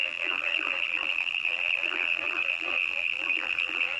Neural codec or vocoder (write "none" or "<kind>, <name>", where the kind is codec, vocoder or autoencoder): vocoder, BigVGAN v2